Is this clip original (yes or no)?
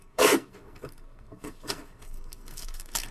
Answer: no